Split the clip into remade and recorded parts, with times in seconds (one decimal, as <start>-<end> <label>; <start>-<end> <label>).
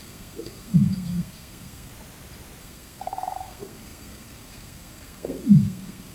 0.0-1.9 remade; 1.9-2.6 recorded; 2.6-6.1 remade